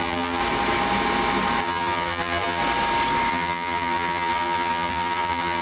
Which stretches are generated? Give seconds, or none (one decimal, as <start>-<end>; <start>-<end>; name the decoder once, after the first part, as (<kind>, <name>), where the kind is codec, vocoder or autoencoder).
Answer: 0.0-0.4 (vocoder, BigVGAN v2); 1.6-2.6; 3.3-5.6